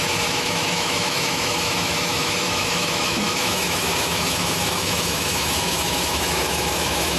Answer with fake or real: fake